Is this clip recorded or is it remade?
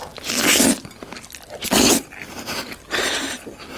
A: recorded